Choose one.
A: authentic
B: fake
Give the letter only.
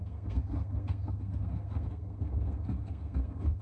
B